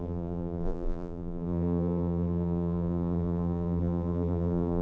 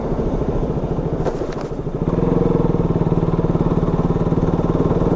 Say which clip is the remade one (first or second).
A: first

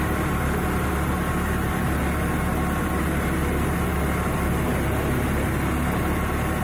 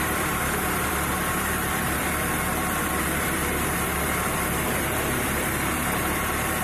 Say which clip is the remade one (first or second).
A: second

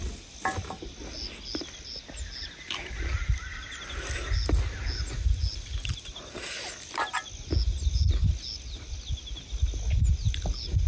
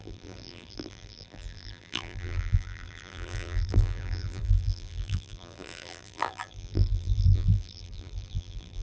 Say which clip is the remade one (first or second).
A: second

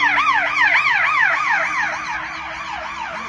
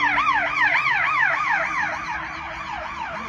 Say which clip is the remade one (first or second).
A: second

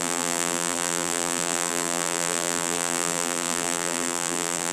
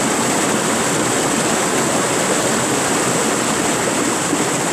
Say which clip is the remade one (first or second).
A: first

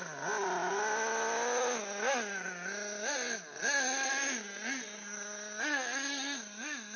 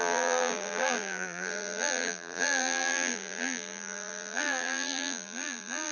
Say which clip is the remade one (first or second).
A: second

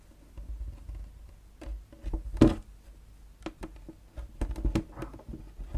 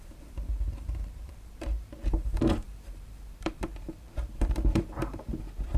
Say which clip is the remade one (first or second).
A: second